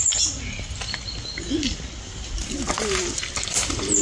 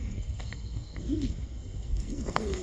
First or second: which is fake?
second